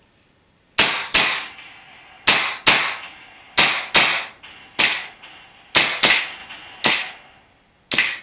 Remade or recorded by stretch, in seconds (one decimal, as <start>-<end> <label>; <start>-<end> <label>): 0.0-1.1 recorded; 1.1-1.7 remade; 1.7-8.2 recorded